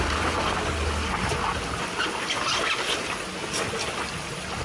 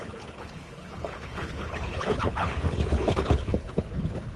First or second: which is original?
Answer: first